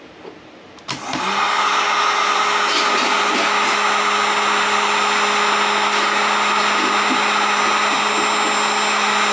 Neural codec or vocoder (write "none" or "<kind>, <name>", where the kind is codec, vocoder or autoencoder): none